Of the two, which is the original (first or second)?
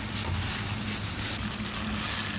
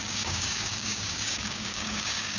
first